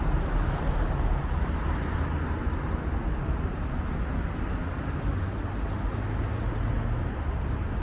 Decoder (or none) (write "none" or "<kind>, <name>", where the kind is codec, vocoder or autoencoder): none